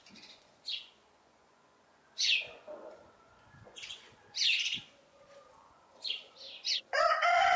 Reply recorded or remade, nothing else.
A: remade